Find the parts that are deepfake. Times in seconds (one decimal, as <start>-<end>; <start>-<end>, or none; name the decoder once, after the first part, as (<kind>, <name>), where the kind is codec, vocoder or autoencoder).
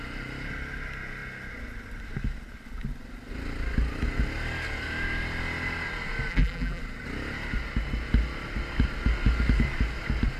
6.3-6.8 (vocoder, BigVGAN v2)